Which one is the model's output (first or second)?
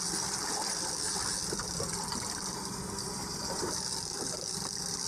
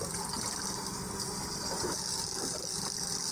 first